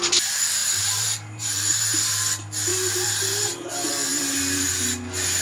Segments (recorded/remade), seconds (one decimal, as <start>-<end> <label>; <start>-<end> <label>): 0.0-0.6 recorded; 0.6-2.1 remade; 2.1-2.7 recorded; 2.7-3.6 remade; 3.6-4.1 recorded; 4.1-4.7 remade; 4.7-5.4 recorded